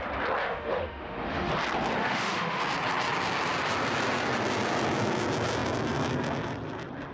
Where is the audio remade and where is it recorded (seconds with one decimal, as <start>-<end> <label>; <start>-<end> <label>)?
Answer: 0.0-0.4 recorded; 0.4-1.5 remade; 1.5-2.0 recorded; 2.0-2.6 remade; 2.6-7.1 recorded